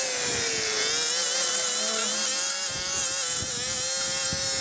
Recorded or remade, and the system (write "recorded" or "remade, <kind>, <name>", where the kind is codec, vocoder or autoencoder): recorded